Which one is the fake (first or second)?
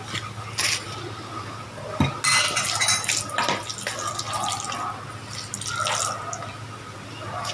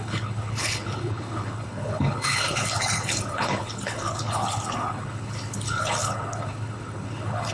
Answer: second